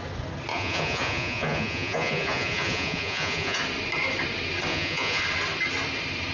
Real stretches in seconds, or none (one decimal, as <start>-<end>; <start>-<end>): 0.0-0.5; 3.6-4.7; 5.2-6.3

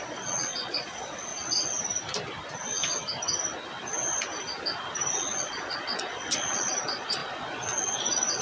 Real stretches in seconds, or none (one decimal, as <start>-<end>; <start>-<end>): 1.3-5.1

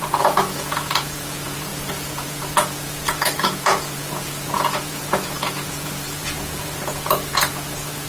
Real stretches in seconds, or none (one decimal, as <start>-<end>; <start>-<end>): none

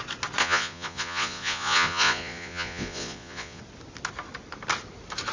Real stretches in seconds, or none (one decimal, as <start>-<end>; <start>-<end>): 0.0-0.4; 3.6-5.3

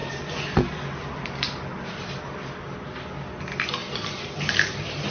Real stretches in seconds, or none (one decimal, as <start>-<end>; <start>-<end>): 0.0-5.1

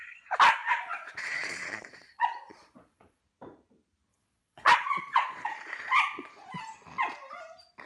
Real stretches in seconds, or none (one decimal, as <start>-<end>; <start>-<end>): 0.0-0.6; 3.2-4.1; 6.3-7.9